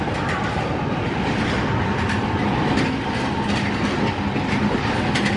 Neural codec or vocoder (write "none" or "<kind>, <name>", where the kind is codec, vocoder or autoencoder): none